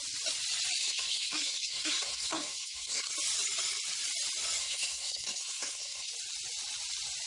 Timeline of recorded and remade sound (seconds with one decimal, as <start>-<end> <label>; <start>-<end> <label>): 0.0-0.8 recorded; 0.8-3.1 remade; 3.1-4.6 recorded; 4.6-6.1 remade; 6.1-7.3 recorded